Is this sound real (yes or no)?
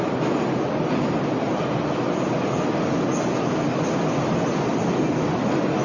yes